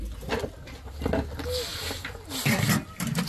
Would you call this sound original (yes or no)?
yes